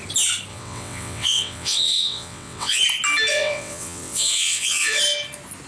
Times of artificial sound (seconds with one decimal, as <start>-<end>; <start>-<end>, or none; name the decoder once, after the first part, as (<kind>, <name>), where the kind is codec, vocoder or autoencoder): 0.5-2.8 (vocoder, WaveNeXt); 3.3-5.0